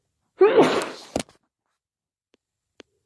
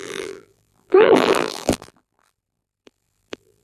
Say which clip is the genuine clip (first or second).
first